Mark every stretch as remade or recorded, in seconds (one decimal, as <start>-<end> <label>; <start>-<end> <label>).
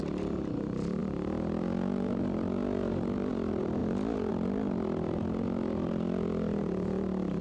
0.0-7.4 recorded